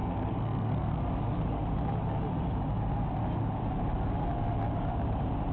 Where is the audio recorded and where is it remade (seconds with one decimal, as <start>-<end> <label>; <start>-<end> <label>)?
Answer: 0.0-1.0 remade; 1.0-5.5 recorded

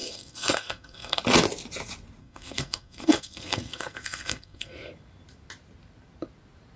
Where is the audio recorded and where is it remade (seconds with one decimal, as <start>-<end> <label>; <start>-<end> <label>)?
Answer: 0.0-1.2 remade; 1.2-2.2 recorded; 2.2-4.9 remade; 4.9-6.8 recorded

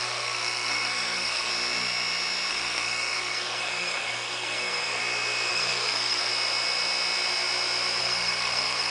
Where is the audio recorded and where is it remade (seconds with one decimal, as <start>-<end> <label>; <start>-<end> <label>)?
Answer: 0.0-1.5 remade; 1.5-2.5 recorded; 2.5-5.0 remade; 5.0-5.5 recorded; 5.5-6.3 remade; 6.3-8.0 recorded; 8.0-8.9 remade

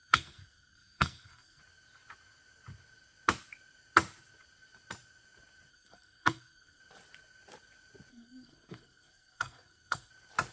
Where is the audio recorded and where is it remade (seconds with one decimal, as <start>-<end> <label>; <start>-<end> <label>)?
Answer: 0.0-1.6 remade; 1.6-5.7 recorded; 5.7-6.8 remade; 6.8-8.1 recorded; 8.1-10.1 remade; 10.1-10.5 recorded

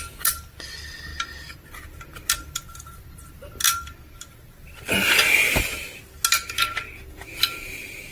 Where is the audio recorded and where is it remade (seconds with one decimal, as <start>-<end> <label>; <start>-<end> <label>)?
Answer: 0.0-8.1 recorded

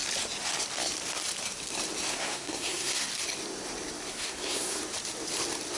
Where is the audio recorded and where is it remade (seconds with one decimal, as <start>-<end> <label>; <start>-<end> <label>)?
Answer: 0.0-2.1 recorded; 2.1-3.1 remade; 3.1-4.1 recorded; 4.1-4.8 remade; 4.8-5.8 recorded

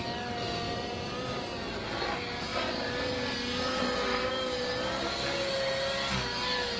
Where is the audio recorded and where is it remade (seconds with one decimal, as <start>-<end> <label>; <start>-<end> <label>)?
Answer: 0.0-6.8 recorded